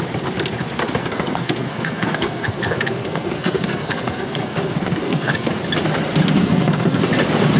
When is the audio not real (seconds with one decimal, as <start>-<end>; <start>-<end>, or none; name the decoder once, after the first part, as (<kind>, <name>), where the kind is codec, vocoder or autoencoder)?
1.0-5.6 (codec, SNAC); 6.4-7.0